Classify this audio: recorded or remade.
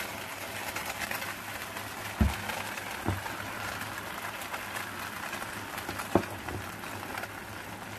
recorded